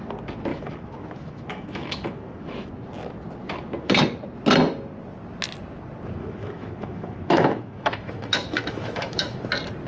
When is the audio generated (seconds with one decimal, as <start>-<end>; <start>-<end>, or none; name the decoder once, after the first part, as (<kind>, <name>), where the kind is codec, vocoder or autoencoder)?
0.5-2.7 (autoencoder, DAC-VAE); 6.2-9.5